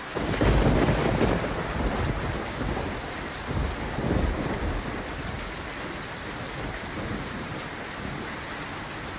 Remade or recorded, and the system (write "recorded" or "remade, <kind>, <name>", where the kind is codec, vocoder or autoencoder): recorded